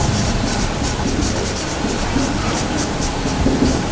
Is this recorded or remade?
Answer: remade